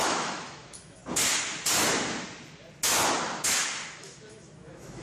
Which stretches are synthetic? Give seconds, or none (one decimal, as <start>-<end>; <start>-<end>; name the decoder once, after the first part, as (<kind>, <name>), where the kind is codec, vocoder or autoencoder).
0.0-1.0 (autoencoder, DAC-VAE); 4.0-5.0